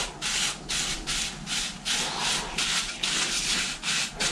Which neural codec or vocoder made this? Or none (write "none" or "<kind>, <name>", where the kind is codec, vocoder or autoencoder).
none